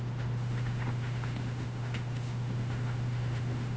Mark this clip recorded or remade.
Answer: remade